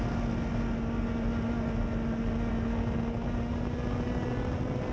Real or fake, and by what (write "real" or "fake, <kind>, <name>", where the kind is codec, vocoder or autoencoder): real